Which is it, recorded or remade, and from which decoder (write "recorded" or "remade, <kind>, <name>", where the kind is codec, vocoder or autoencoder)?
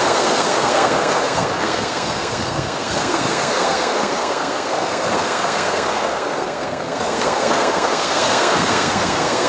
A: remade, codec, SNAC